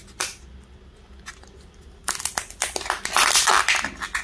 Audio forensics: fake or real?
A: real